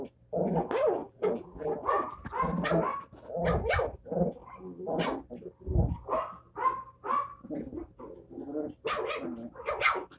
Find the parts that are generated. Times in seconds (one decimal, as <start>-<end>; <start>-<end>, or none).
1.0-1.7